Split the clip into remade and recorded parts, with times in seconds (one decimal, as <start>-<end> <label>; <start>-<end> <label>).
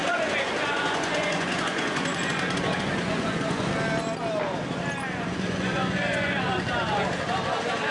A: 0.0-3.7 remade; 3.7-5.1 recorded; 5.1-6.4 remade; 6.4-7.9 recorded